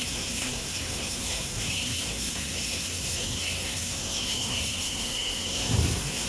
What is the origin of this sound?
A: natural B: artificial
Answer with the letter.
B